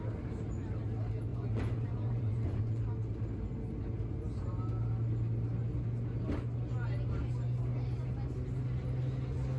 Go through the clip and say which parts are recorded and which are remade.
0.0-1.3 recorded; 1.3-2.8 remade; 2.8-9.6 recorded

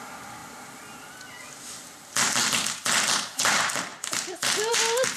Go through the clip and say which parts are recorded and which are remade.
0.0-5.2 recorded

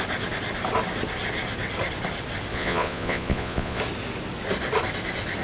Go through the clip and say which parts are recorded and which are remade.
0.0-2.5 recorded; 2.5-3.8 remade; 3.8-5.4 recorded

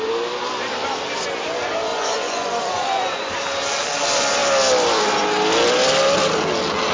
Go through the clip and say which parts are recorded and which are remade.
0.0-1.9 recorded; 1.9-3.3 remade; 3.3-6.9 recorded

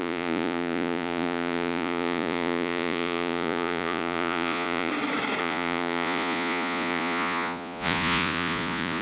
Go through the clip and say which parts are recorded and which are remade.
0.0-4.9 remade; 4.9-5.4 recorded; 5.4-9.0 remade

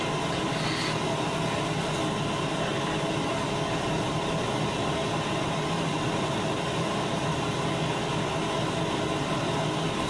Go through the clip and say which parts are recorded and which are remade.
0.0-10.1 recorded